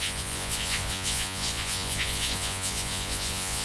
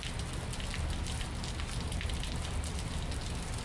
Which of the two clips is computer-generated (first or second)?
first